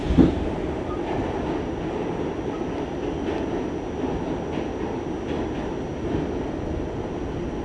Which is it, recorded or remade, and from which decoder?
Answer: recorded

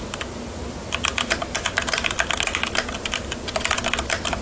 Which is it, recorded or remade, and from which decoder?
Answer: recorded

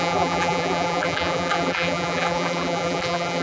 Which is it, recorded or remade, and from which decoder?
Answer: remade, vocoder, BigVGAN v2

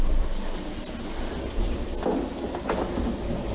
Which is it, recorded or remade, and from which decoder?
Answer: recorded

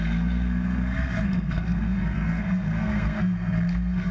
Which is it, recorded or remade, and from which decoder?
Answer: remade, codec, SNAC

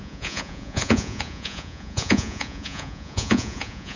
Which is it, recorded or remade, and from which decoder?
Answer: remade, vocoder, Vocos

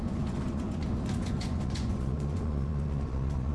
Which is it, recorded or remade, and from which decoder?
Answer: remade, vocoder, Vocos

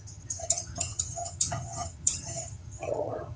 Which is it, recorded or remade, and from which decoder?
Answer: remade, vocoder, HiFi-GAN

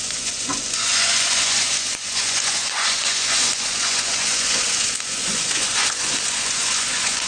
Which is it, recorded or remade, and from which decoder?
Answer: remade, vocoder, Vocos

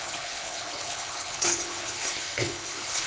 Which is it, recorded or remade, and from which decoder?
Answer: remade, codec, HILCodec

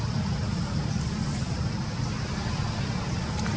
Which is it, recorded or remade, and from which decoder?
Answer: recorded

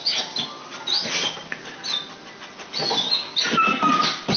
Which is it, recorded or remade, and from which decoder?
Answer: recorded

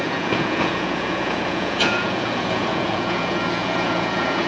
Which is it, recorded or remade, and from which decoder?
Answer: remade, vocoder, Vocos